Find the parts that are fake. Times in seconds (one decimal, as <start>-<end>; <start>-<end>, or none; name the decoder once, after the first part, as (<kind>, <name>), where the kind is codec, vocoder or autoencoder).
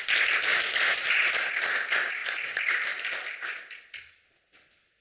none